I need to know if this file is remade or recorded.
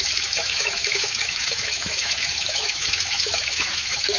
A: remade